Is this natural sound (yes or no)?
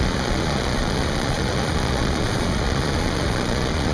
no